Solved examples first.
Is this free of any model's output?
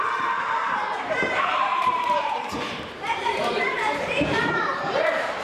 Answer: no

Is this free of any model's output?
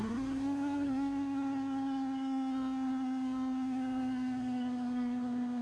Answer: no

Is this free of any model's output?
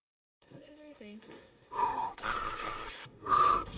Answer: no